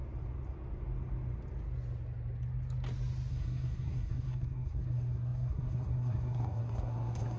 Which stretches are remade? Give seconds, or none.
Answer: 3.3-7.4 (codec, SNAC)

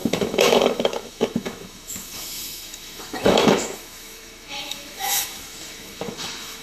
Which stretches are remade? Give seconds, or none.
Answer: 0.0-6.6 (autoencoder, DAC-VAE)

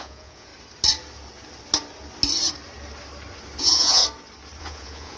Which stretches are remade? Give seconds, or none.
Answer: 0.0-0.5 (vocoder, Vocos); 3.6-4.0; 4.6-5.2

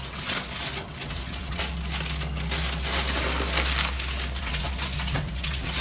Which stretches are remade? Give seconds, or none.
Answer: 0.0-1.6 (vocoder, WaveNeXt); 4.4-5.8

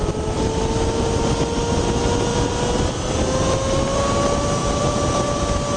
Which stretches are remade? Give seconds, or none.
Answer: 2.3-2.9 (vocoder, BigVGAN v2); 4.6-5.1